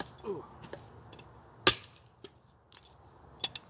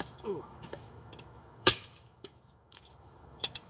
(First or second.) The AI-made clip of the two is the second